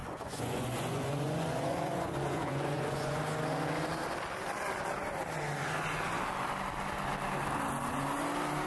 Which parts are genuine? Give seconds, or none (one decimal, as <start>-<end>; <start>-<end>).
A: 3.2-8.7